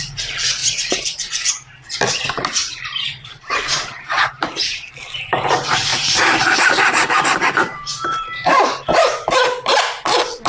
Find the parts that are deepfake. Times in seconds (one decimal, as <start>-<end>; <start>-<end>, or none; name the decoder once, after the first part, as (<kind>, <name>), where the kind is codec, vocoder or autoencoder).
0.6-1.5 (vocoder, BigVGAN v2); 2.6-4.9; 5.9-9.8